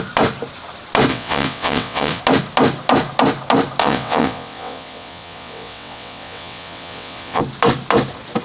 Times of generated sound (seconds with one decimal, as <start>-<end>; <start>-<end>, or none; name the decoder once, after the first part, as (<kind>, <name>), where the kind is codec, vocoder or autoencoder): 1.1-2.2 (vocoder, WaveNeXt); 3.8-7.4